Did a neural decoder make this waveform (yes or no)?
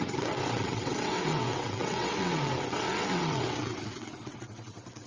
yes